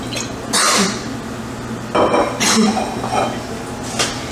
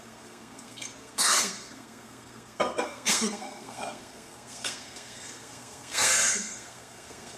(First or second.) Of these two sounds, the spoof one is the second